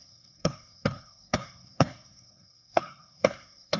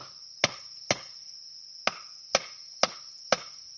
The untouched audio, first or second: second